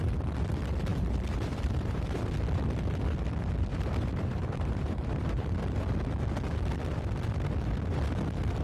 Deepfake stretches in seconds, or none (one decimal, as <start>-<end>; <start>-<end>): 0.9-2.3; 3.7-5.5